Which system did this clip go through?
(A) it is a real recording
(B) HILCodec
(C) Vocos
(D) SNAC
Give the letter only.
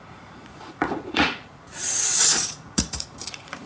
C